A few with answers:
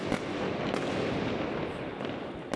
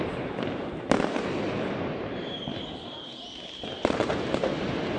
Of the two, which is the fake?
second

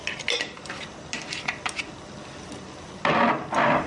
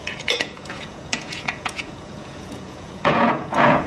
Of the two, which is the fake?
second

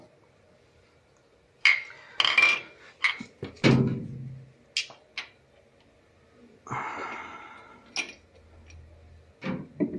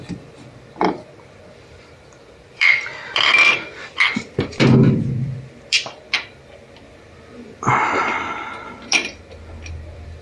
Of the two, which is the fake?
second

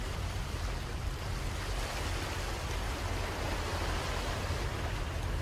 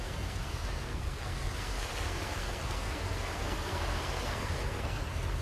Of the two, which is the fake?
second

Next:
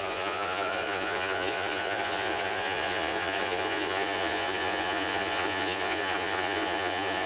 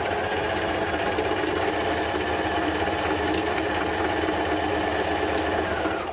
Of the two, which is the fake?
first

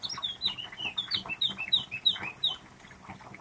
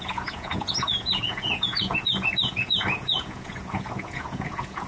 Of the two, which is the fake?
second